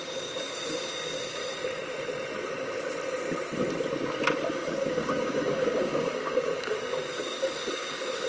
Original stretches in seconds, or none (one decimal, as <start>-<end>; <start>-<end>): 1.4-4.5